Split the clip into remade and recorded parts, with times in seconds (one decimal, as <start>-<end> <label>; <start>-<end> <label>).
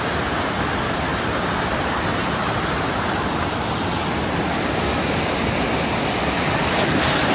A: 0.0-7.3 recorded